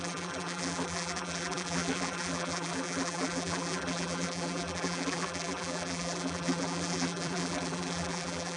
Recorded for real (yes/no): no